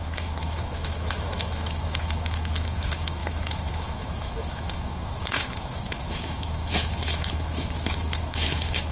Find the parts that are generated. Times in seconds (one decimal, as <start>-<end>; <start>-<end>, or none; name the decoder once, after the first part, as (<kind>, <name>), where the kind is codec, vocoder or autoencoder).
0.0-8.9 (autoencoder, DAC-VAE)